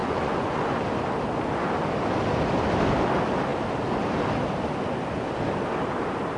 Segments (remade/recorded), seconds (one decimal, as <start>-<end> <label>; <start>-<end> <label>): 0.0-0.8 remade; 0.8-6.4 recorded

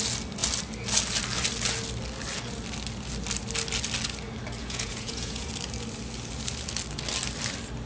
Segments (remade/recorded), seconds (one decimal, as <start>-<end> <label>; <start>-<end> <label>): 0.0-4.6 recorded; 4.6-5.5 remade; 5.5-7.9 recorded

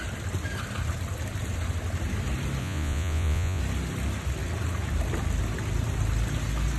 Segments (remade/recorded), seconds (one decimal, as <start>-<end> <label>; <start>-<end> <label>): 0.0-2.6 recorded; 2.6-3.6 remade; 3.6-6.8 recorded

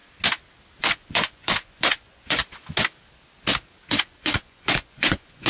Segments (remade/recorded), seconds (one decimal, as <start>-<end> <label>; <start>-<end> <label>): 0.0-0.8 recorded; 0.8-2.4 remade; 2.4-3.9 recorded; 3.9-5.5 remade

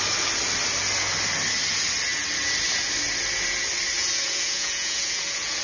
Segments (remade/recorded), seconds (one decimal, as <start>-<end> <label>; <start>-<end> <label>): 0.0-4.0 recorded; 4.0-5.6 remade